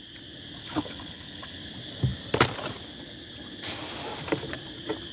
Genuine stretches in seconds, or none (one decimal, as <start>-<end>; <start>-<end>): 0.0-0.6; 1.6-5.1